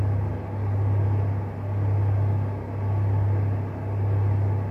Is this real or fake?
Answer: real